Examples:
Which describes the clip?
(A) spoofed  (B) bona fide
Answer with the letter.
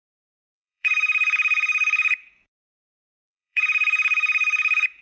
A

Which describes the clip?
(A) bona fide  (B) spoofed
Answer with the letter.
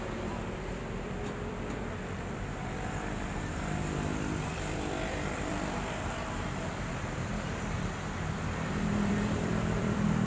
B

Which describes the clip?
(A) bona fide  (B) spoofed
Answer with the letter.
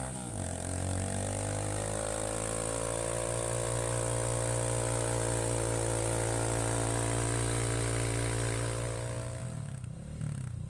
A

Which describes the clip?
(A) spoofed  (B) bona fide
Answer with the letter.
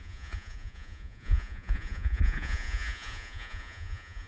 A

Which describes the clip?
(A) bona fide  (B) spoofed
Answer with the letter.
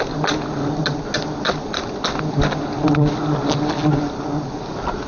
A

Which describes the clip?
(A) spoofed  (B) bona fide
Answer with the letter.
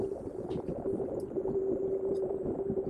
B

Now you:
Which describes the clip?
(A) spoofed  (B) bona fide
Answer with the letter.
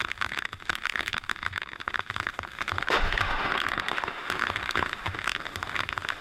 A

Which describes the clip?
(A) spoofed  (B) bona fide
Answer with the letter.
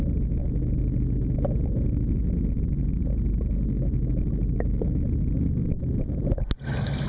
B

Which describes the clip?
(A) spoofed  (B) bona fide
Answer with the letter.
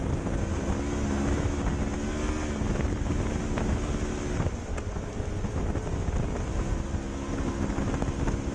B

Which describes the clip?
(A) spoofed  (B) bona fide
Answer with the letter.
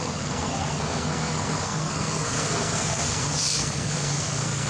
A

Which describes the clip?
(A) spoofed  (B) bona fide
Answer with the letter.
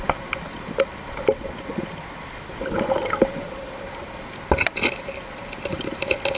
B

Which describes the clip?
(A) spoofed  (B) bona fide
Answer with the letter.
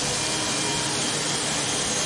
B